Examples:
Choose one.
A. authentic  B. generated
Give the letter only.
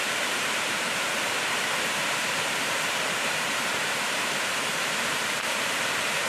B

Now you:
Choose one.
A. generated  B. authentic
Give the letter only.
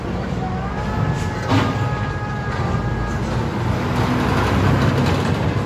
B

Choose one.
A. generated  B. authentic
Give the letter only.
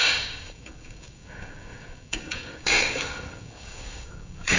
A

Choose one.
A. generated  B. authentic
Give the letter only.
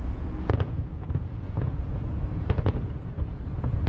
A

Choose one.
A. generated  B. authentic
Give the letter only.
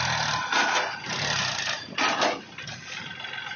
B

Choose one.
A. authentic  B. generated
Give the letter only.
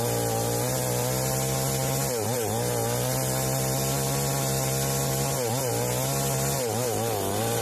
A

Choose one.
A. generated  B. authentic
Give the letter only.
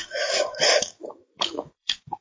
A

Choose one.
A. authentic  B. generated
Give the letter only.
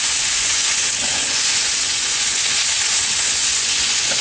B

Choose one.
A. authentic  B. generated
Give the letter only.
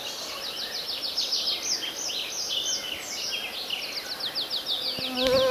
A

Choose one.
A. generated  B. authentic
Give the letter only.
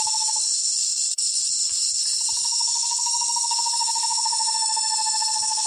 A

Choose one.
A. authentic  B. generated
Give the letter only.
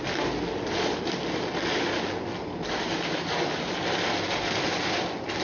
A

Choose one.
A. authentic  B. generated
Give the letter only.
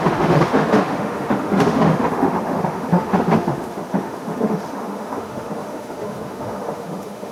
B